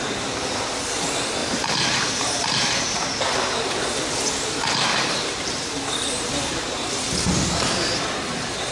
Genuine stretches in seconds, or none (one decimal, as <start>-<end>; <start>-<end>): 0.0-1.4; 2.5-4.9; 7.9-8.7